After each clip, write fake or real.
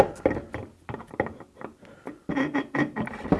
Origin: real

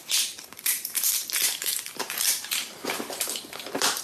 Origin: fake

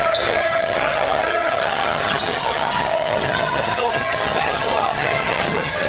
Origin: fake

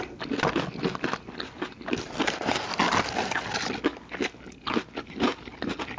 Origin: real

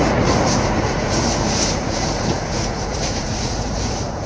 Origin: fake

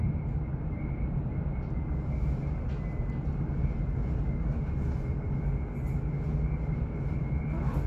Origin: real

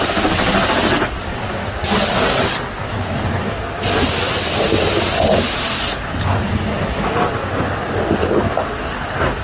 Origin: real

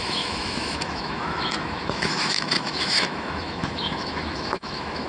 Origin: fake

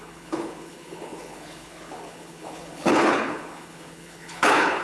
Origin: fake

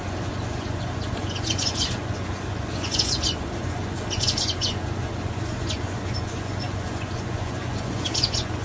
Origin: fake